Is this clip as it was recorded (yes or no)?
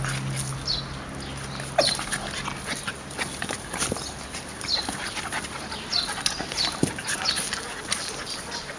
yes